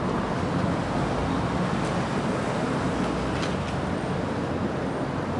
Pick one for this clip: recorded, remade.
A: recorded